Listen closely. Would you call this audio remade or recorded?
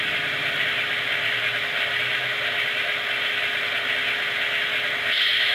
recorded